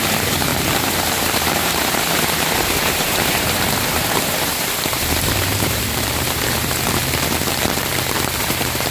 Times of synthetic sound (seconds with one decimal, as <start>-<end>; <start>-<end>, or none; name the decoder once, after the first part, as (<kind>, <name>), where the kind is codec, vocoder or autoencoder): 0.0-7.0 (vocoder, BigVGAN v2); 8.4-8.9